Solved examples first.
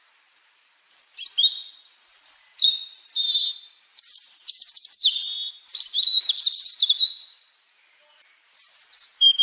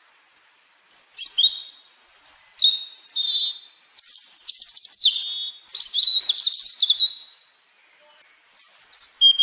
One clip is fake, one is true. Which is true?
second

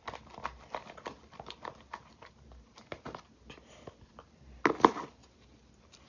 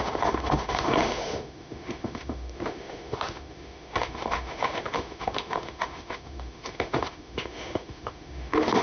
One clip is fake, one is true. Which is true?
first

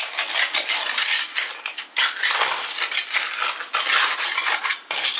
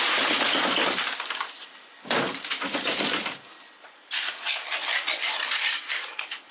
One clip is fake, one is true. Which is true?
first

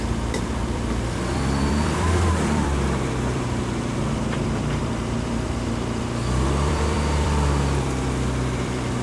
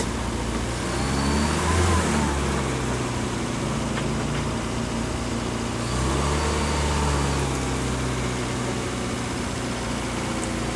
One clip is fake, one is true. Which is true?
second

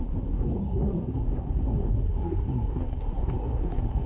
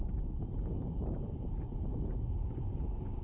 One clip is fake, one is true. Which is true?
second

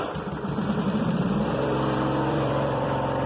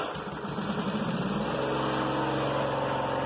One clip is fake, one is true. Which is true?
second